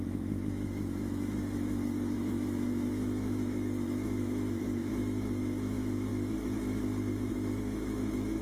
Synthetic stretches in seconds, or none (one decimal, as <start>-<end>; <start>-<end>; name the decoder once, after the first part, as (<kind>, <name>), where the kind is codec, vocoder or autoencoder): 0.0-6.1 (autoencoder, DAC-VAE); 7.3-8.4